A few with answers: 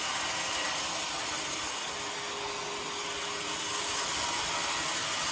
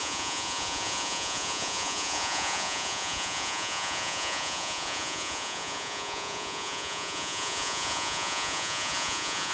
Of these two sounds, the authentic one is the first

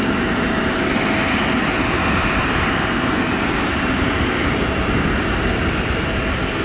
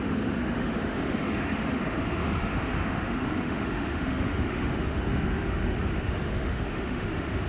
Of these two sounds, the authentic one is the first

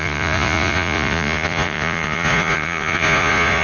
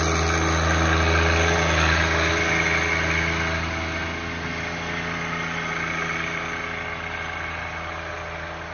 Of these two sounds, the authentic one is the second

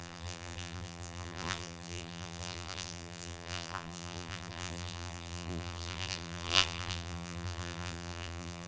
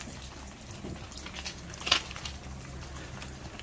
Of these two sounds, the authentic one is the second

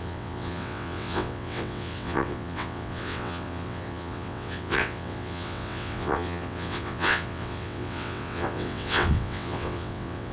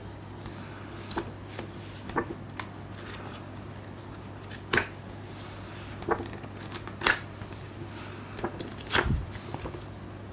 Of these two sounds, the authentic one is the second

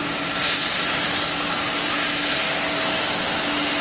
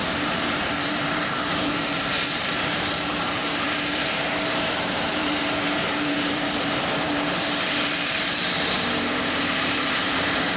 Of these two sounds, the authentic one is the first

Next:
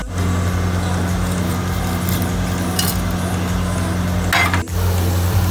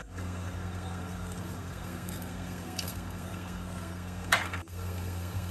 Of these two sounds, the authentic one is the first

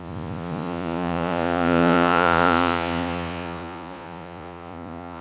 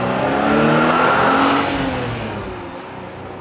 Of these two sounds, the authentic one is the second